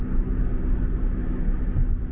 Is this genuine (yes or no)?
yes